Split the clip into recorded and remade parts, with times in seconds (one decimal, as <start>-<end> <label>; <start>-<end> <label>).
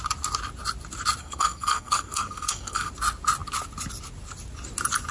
0.0-1.2 recorded; 1.2-2.9 remade; 2.9-5.1 recorded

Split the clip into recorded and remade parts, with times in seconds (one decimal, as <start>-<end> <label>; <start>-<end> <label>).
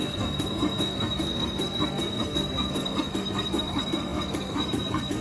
0.0-5.2 remade